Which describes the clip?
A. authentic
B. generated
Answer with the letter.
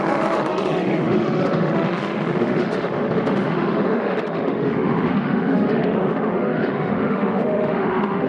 B